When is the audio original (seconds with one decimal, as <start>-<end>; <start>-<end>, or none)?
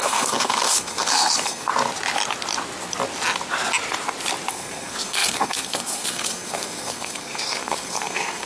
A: 1.7-4.5